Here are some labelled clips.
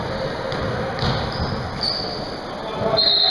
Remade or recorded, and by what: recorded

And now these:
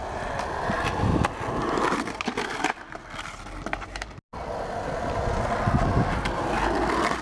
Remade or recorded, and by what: recorded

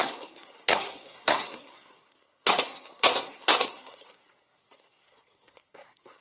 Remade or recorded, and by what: remade, codec, SNAC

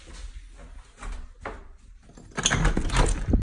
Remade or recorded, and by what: recorded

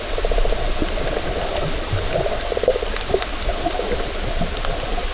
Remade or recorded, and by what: recorded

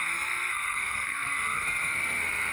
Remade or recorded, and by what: remade, codec, SNAC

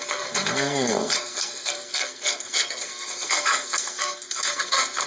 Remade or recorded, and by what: remade, codec, SNAC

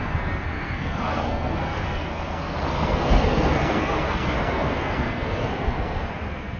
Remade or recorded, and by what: remade, codec, SNAC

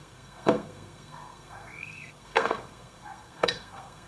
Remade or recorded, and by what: remade, codec, SNAC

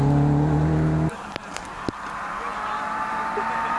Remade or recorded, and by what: recorded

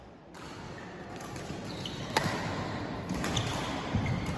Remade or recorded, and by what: recorded